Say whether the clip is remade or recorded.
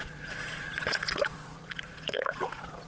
remade